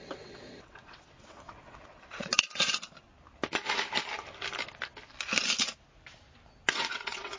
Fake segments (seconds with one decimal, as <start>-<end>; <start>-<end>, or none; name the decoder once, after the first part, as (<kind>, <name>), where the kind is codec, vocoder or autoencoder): 0.0-2.3 (vocoder, WaveNeXt); 6.7-7.4